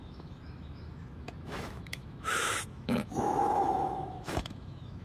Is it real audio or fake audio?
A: fake